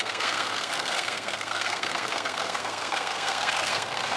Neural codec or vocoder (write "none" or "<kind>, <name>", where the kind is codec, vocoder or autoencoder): codec, SNAC